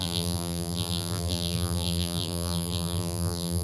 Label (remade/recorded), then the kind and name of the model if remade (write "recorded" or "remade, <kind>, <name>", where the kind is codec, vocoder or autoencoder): remade, vocoder, BigVGAN v2